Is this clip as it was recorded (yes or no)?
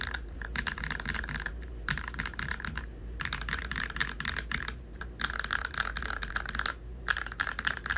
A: no